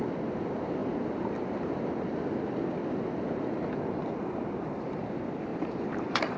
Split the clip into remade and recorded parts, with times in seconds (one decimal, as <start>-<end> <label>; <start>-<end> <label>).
0.0-5.5 recorded; 5.5-6.4 remade